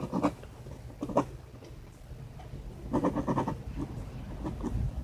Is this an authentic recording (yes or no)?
yes